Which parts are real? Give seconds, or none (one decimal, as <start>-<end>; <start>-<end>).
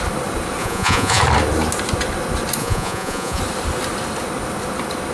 0.0-0.6; 1.2-2.6; 3.4-5.1